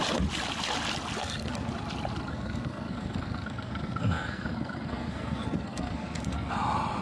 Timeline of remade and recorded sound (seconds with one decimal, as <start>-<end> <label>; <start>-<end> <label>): 0.0-1.2 recorded; 1.2-1.7 remade; 1.7-2.3 recorded; 2.3-6.5 remade; 6.5-7.0 recorded